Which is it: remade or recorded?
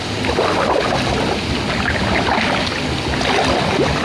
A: recorded